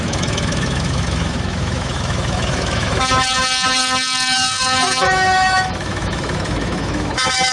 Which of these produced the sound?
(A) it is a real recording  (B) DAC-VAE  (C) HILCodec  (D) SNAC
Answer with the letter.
B